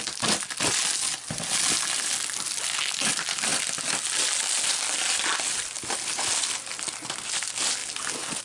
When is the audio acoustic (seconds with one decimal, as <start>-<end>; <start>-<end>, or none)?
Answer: 0.0-8.4